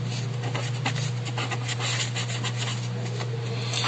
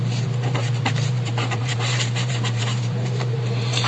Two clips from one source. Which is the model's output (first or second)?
second